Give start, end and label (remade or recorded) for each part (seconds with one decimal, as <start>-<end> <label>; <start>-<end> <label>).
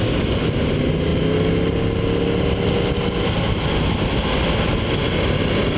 0.0-5.8 recorded